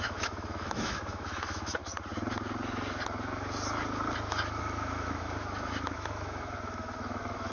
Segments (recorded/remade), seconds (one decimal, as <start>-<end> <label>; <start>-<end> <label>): 0.0-1.8 remade; 1.8-4.6 recorded; 4.6-7.5 remade